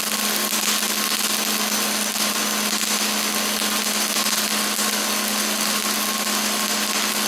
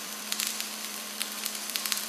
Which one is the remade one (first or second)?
second